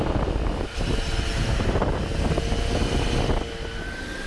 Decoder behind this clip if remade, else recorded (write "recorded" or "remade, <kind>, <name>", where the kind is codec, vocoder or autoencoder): recorded